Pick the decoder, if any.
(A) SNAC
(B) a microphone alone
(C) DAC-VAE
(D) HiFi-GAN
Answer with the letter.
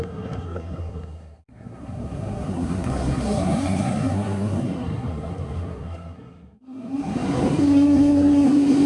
A